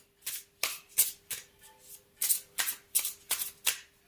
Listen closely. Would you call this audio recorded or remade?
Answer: recorded